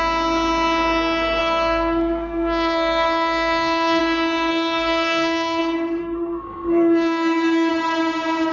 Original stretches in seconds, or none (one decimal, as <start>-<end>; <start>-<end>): 0.0-1.4; 4.0-4.5; 5.6-6.0; 7.7-8.5